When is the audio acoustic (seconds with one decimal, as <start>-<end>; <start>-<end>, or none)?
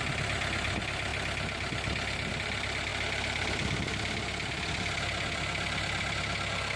0.0-6.8